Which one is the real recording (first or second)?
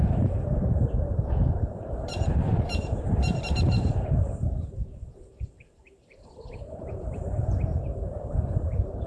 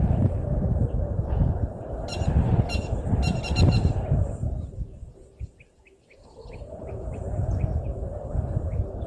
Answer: second